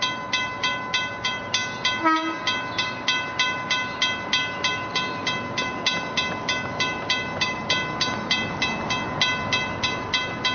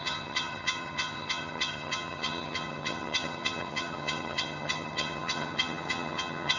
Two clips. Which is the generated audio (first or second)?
second